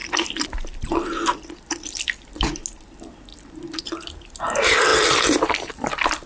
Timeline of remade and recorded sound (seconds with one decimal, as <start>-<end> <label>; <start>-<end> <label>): 0.0-0.9 remade; 0.9-3.3 recorded; 3.3-3.8 remade; 3.8-4.9 recorded; 4.9-5.7 remade; 5.7-6.3 recorded